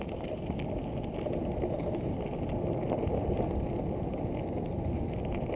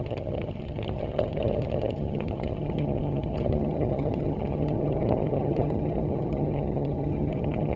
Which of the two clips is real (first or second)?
first